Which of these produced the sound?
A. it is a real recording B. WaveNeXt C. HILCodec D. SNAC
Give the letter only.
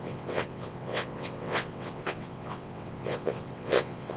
B